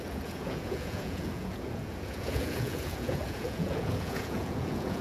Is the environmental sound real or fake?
fake